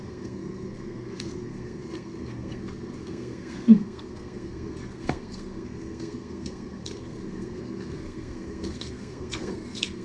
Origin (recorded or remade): remade